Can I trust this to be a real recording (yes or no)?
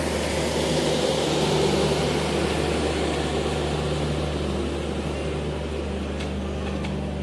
yes